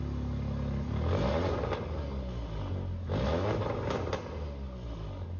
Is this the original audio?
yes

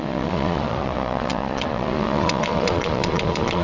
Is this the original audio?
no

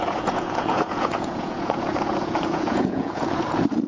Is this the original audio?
no